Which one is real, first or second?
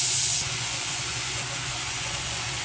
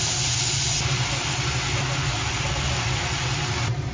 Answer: second